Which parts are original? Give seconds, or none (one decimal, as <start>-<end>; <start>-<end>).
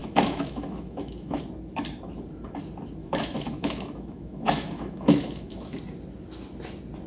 1.4-3.0; 5.8-7.1